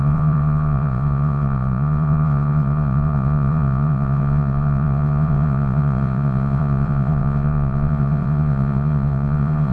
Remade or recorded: remade